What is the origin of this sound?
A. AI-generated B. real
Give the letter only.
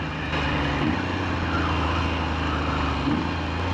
B